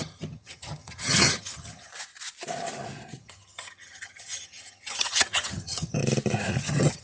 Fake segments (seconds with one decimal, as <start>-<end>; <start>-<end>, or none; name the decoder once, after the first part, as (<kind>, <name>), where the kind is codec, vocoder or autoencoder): 0.0-1.9 (vocoder, HiFi-GAN); 3.2-6.0; 6.6-7.0